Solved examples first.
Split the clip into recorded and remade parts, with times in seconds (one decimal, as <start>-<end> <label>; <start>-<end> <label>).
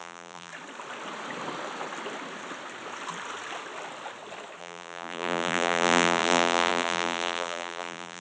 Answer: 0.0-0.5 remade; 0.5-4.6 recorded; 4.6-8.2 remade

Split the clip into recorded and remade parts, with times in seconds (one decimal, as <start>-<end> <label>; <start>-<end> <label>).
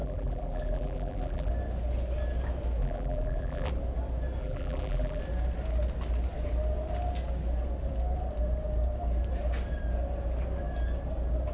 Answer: 0.0-1.5 remade; 1.5-2.8 recorded; 2.8-3.7 remade; 3.7-4.4 recorded; 4.4-5.2 remade; 5.2-11.5 recorded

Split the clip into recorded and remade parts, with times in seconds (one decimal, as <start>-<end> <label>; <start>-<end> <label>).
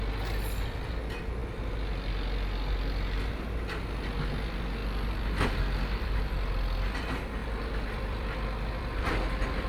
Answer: 0.0-4.8 recorded; 4.8-6.2 remade; 6.2-7.4 recorded; 7.4-9.7 remade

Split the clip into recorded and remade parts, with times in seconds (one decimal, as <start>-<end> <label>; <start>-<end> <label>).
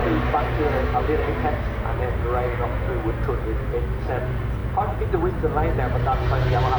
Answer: 0.0-4.1 recorded; 4.1-4.6 remade; 4.6-6.8 recorded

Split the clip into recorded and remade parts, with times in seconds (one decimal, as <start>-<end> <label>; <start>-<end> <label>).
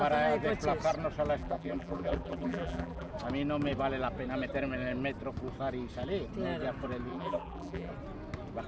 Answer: 0.0-1.4 recorded; 1.4-3.1 remade; 3.1-7.1 recorded; 7.1-7.9 remade; 7.9-8.7 recorded